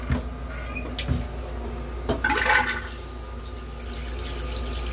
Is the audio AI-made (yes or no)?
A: no